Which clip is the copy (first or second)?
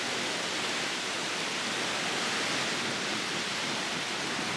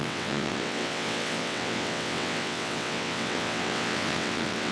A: second